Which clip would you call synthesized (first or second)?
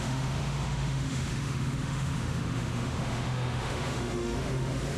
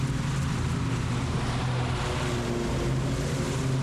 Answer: first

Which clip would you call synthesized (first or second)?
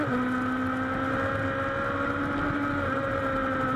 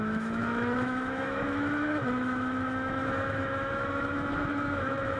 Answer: second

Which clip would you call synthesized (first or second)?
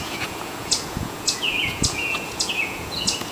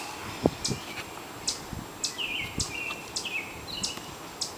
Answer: first